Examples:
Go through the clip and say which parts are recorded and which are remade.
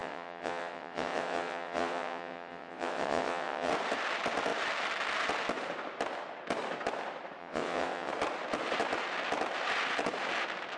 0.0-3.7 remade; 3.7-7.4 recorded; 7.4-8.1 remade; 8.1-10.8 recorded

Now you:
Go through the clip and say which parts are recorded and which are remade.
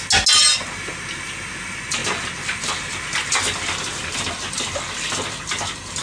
0.0-6.0 recorded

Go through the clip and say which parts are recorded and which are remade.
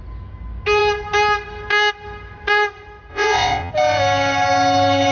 0.0-3.1 recorded; 3.1-3.7 remade; 3.7-5.1 recorded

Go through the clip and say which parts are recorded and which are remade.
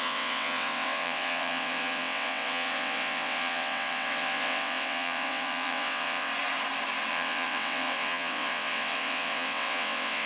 0.0-6.3 remade; 6.3-7.1 recorded; 7.1-10.3 remade